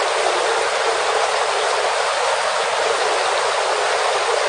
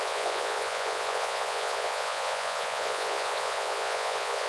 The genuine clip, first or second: first